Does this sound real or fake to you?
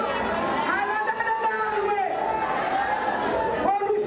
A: real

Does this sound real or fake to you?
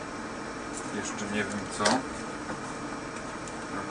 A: real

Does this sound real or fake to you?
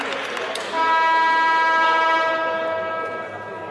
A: real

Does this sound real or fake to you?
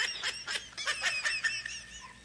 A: real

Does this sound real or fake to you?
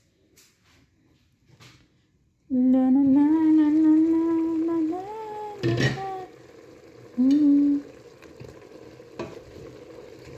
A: real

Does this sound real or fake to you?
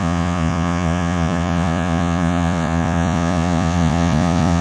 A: fake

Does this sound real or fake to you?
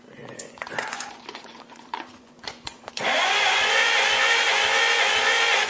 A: fake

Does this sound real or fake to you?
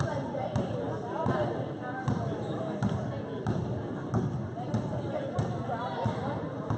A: real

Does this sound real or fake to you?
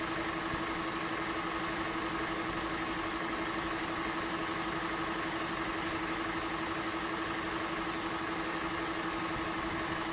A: real